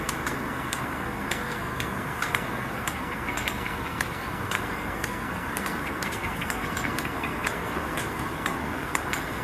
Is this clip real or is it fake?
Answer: fake